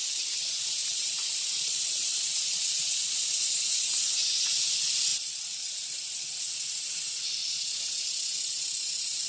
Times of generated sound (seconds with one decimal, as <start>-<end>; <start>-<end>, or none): 0.8-2.2; 5.1-6.4